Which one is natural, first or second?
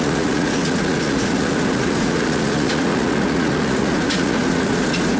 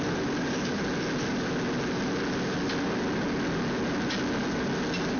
second